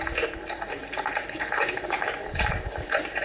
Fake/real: fake